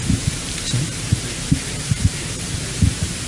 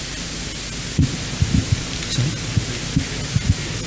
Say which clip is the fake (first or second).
first